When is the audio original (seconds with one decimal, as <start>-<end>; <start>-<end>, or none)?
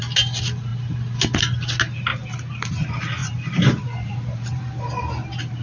0.0-2.1; 2.7-3.2; 4.9-5.6